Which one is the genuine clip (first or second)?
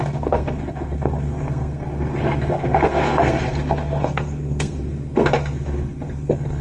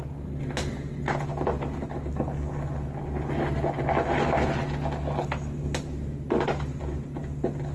second